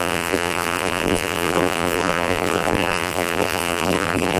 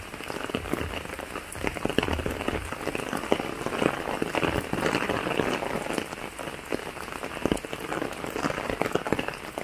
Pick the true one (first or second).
second